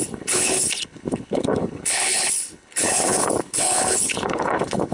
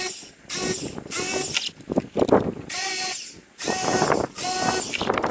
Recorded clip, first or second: second